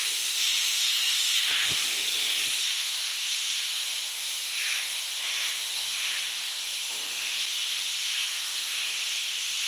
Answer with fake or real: fake